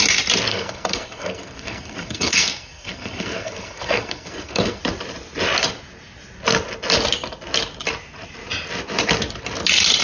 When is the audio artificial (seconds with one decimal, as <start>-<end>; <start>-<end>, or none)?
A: 0.5-4.8